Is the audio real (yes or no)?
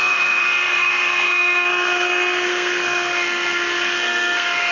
no